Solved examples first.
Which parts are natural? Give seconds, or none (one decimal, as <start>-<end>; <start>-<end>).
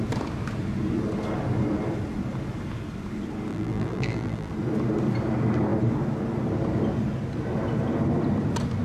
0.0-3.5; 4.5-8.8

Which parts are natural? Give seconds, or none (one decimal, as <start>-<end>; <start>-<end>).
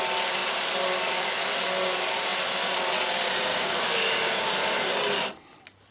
0.0-3.5; 4.5-5.9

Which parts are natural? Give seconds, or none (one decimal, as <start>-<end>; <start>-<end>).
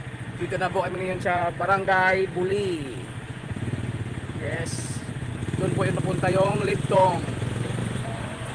2.5-3.2; 5.4-6.3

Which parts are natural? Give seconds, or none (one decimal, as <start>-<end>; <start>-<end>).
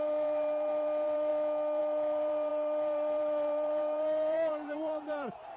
1.3-1.8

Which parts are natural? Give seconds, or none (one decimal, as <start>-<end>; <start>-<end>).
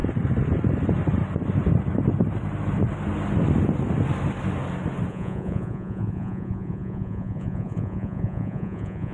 0.0-5.1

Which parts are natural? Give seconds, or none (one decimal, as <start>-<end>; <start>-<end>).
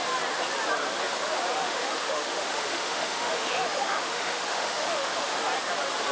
0.0-1.6; 5.3-6.1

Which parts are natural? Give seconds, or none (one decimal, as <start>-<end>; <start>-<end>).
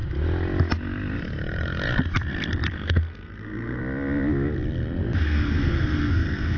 0.0-2.7; 3.8-5.2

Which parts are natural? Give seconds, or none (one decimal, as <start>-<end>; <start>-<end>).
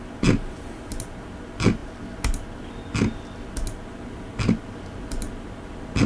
0.0-6.1